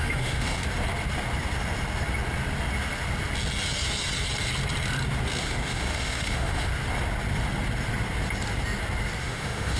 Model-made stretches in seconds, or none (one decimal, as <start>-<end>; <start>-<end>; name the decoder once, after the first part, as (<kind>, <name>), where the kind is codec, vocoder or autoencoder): 0.0-0.6 (autoencoder, DAC-VAE); 5.4-6.7; 9.2-9.8